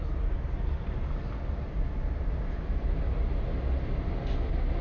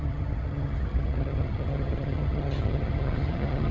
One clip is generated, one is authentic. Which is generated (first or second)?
second